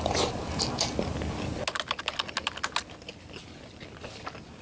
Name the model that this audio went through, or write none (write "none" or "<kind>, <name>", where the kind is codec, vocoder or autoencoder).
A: none